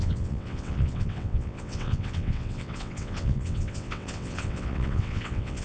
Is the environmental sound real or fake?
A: fake